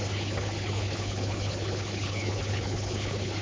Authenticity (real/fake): fake